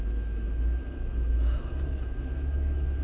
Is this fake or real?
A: fake